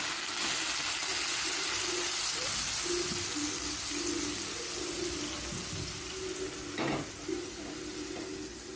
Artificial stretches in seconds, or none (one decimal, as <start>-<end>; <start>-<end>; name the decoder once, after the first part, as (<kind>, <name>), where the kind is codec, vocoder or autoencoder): 1.3-2.3 (vocoder, BigVGAN v2)